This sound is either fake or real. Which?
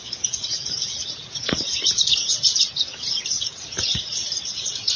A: fake